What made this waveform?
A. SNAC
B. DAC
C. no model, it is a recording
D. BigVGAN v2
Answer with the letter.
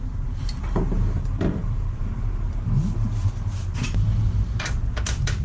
C